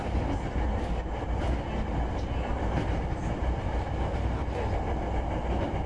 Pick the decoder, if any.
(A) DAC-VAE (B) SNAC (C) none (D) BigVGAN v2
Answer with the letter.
C